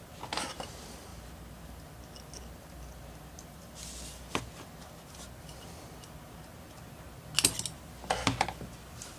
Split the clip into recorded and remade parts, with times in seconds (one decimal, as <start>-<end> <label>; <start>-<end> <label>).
0.0-9.2 recorded